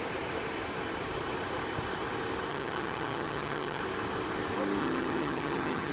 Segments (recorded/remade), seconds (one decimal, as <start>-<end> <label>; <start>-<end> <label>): 0.0-2.5 recorded; 2.5-3.8 remade; 3.8-4.8 recorded; 4.8-5.9 remade